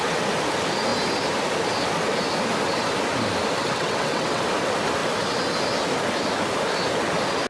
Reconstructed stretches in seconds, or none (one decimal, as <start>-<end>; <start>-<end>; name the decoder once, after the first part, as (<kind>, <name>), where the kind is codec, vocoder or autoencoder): 3.6-4.4 (vocoder, WaveNeXt)